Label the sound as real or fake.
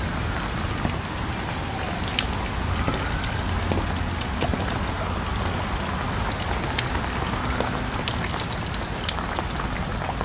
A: real